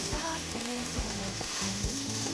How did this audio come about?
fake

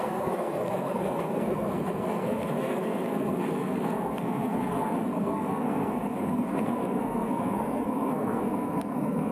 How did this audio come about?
fake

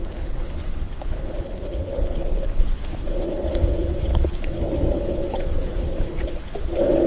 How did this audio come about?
fake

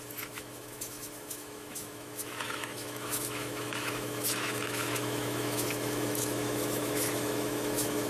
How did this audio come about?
fake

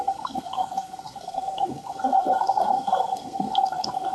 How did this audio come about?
fake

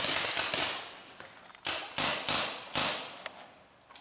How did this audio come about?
real